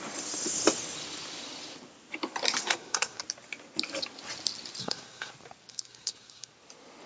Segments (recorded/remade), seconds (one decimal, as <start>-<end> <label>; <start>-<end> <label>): 0.0-2.6 recorded; 2.6-3.2 remade; 3.2-4.8 recorded; 4.8-5.3 remade; 5.3-5.7 recorded; 5.7-6.5 remade; 6.5-7.1 recorded

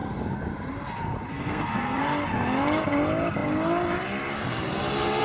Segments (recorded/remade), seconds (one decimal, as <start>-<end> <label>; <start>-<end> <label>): 0.0-1.3 recorded; 1.3-2.0 remade; 2.0-5.2 recorded

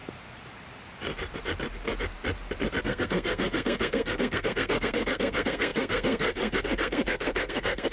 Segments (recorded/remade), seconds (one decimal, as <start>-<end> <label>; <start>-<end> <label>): 0.0-2.8 recorded; 2.8-7.9 remade

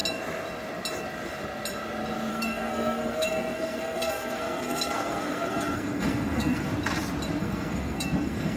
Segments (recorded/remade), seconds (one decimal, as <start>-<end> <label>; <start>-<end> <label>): 0.0-2.3 recorded; 2.3-6.7 remade; 6.7-7.4 recorded; 7.4-8.6 remade